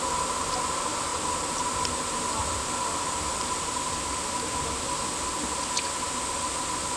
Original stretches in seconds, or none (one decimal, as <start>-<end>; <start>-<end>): 0.0-7.0